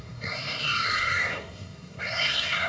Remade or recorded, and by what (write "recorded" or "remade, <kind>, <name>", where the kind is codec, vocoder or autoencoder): remade, codec, SNAC